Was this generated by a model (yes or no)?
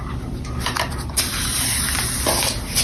no